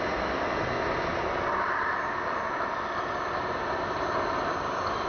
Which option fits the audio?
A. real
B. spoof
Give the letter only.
A